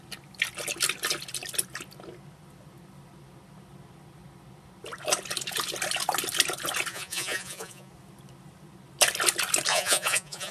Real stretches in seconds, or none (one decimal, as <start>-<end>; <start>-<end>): 0.0-6.9; 7.9-9.7